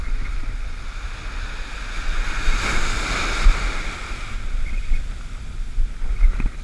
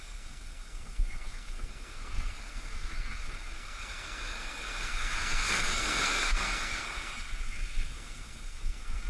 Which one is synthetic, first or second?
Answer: second